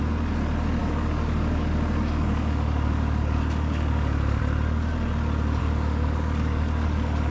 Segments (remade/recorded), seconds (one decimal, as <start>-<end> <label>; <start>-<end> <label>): 0.0-0.8 recorded; 0.8-4.4 remade; 4.4-5.6 recorded; 5.6-7.3 remade